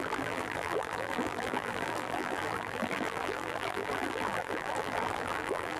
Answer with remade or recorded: remade